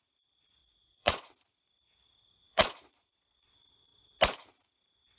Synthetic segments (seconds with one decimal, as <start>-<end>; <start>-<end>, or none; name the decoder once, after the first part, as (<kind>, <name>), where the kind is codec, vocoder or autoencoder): 0.6-1.3 (vocoder, Vocos); 2.5-3.5